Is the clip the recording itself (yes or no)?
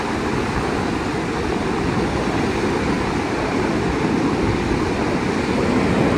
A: yes